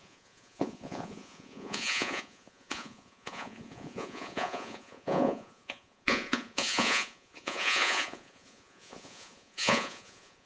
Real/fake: fake